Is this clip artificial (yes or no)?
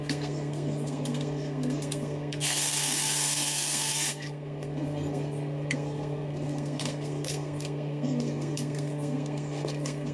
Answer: yes